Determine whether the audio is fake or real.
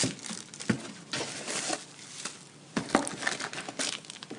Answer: real